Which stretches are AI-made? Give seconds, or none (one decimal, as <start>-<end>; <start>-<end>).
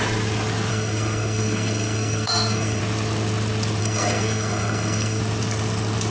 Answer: 0.7-2.8; 3.8-5.2